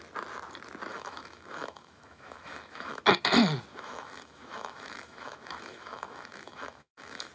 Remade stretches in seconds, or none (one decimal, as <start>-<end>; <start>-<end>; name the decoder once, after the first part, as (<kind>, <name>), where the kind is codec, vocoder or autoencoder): 0.9-3.0 (autoencoder, DAC-VAE); 3.7-7.3